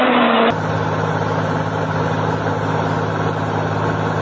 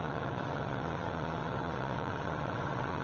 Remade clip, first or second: second